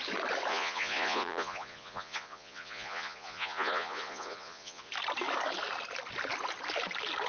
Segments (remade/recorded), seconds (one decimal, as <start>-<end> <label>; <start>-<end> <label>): 0.0-0.5 recorded; 0.5-4.9 remade; 4.9-7.3 recorded